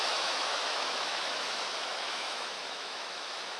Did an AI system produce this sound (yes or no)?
yes